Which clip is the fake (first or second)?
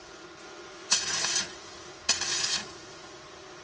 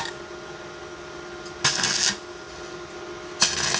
first